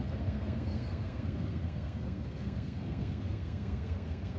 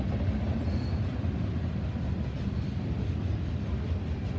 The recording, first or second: second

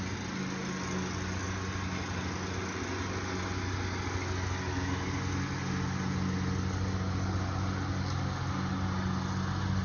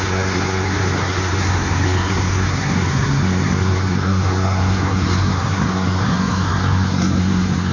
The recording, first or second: first